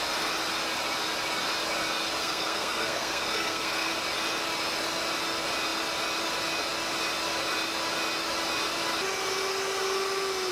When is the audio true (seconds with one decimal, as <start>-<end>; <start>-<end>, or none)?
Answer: 0.0-2.2; 3.9-10.5